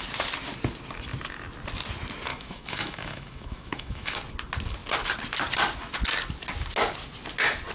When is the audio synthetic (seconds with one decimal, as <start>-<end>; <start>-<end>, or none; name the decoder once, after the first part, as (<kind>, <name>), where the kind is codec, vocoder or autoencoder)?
2.3-4.2 (autoencoder, DAC-VAE)